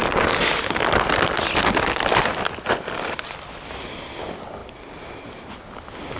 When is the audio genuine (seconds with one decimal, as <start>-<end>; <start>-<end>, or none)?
0.0-6.2